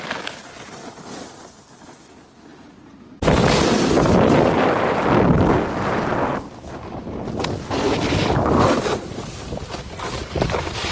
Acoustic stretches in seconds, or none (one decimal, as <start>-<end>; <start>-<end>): 0.0-10.9